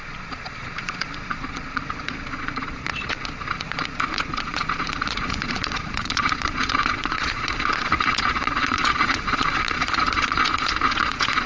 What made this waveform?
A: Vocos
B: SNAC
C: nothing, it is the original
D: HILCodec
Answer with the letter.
A